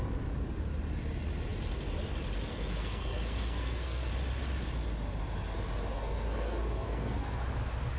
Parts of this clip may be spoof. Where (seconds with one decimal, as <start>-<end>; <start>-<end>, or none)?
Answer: 2.5-4.1; 5.9-7.4